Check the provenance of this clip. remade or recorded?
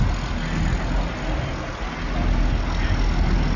recorded